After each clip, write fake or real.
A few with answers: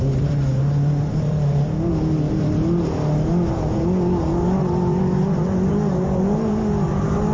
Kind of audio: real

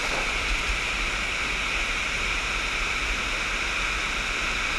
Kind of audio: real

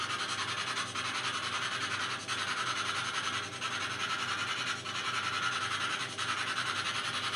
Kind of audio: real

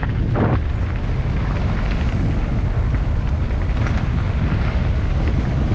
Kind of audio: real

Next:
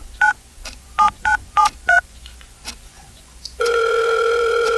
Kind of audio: fake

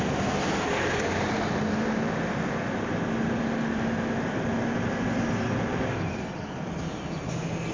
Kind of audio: real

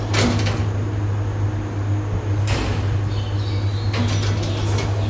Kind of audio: real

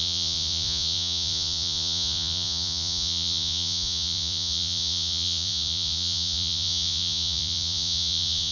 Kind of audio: fake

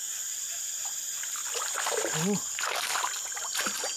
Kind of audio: real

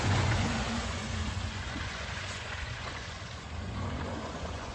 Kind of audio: fake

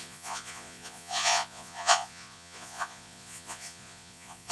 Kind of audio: fake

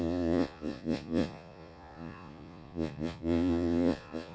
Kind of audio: fake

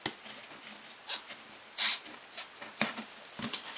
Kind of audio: real